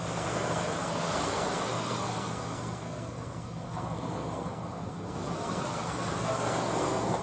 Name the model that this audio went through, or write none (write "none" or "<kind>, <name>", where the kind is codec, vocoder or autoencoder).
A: codec, SNAC